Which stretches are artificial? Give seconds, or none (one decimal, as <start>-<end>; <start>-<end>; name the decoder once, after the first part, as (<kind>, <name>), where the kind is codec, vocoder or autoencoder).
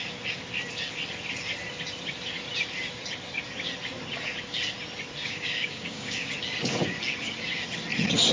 5.2-6.3 (codec, DAC)